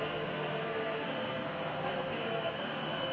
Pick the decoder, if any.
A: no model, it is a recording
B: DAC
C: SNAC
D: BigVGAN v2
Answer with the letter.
C